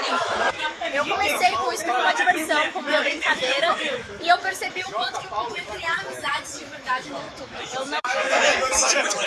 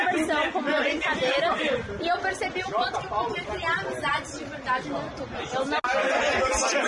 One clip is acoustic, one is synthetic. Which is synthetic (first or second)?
first